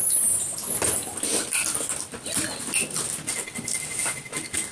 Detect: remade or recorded recorded